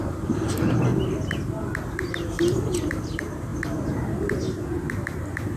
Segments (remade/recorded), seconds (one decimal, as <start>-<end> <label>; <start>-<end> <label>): 0.0-0.9 remade; 0.9-2.5 recorded; 2.5-3.5 remade; 3.5-4.9 recorded; 4.9-5.6 remade